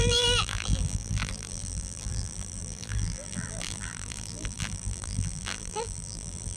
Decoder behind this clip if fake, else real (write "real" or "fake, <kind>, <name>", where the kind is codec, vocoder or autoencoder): fake, vocoder, BigVGAN v2